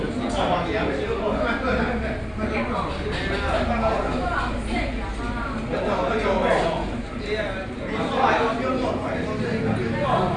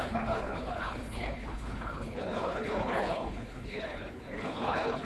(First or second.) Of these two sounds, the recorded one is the first